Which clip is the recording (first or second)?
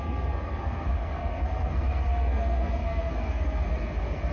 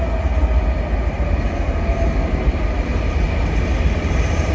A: second